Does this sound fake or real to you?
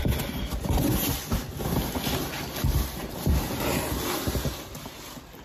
real